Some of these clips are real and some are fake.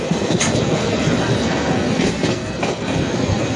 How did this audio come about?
fake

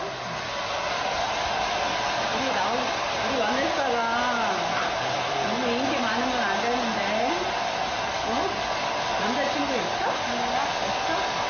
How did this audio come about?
real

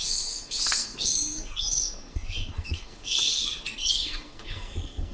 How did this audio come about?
fake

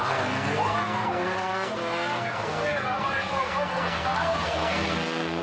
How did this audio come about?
fake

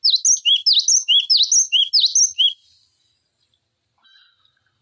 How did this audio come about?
real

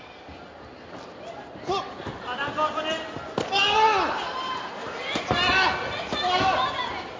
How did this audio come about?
real